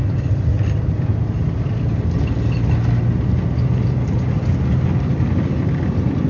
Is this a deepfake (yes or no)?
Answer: no